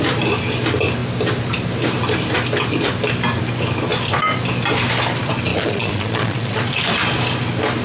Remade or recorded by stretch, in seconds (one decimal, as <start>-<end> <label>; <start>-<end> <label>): 0.0-5.5 recorded; 5.5-6.6 remade; 6.6-7.8 recorded